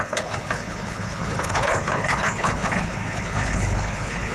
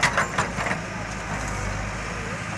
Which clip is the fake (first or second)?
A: first